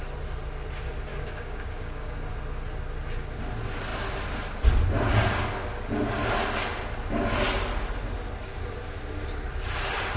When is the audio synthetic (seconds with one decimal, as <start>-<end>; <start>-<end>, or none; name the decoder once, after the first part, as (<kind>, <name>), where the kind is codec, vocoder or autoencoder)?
1.1-2.3 (codec, DAC)